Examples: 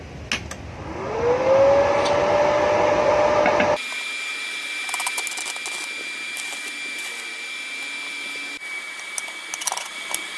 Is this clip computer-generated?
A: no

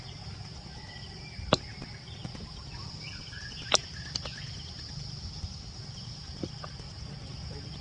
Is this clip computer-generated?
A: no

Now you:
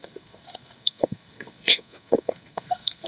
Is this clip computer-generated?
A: yes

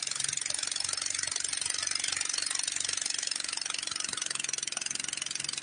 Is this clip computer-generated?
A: no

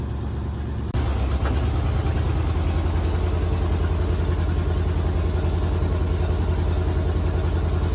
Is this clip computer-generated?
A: no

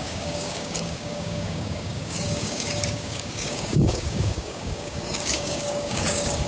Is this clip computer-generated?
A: yes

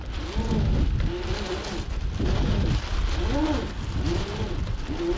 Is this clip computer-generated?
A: no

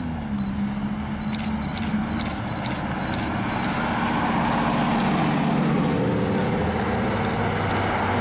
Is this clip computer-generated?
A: no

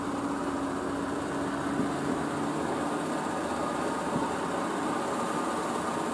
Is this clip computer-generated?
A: no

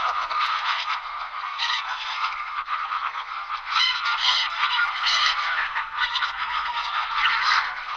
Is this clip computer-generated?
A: yes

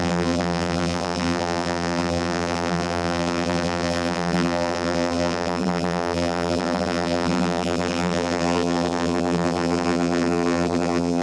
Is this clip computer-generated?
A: yes